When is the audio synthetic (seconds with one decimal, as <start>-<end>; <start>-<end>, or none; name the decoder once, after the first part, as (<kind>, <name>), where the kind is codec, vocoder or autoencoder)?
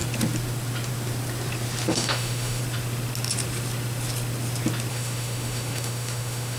1.9-2.6 (autoencoder, DAC-VAE); 4.9-6.6